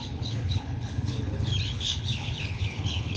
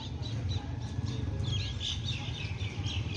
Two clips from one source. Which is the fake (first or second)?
first